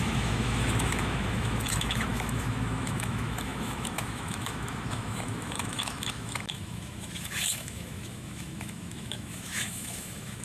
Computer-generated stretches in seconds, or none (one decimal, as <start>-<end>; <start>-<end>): 0.0-10.4